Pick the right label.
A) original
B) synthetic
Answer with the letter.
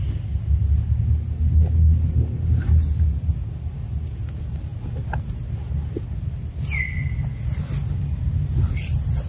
A